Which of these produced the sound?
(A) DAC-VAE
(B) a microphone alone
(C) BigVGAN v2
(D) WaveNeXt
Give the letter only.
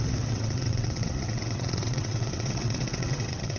D